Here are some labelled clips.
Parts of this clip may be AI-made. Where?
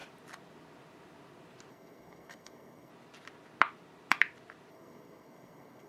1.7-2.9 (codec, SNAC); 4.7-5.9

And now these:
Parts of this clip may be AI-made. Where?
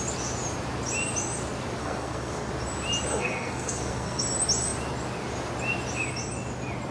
1.8-2.5 (codec, SNAC); 3.1-4.2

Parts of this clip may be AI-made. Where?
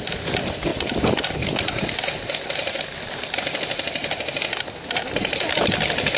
none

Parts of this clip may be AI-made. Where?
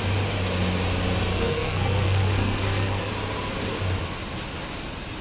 1.3-3.1 (codec, SNAC)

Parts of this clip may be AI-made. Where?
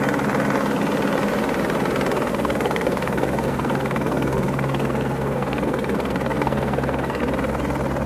2.3-7.2 (codec, SNAC)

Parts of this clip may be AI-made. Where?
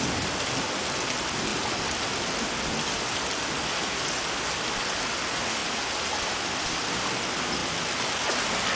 none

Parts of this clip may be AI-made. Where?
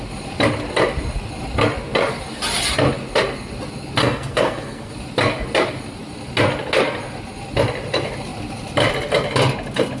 4.0-4.9 (codec, SNAC)